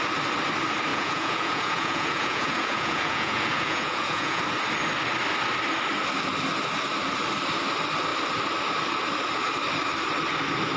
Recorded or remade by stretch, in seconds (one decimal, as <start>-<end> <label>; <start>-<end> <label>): 0.0-0.9 recorded; 0.9-4.4 remade; 4.4-10.8 recorded